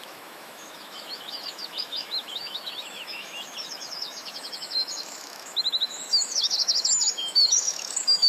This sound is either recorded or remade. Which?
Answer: remade